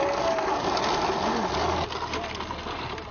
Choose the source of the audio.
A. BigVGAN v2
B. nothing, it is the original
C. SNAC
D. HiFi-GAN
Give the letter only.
B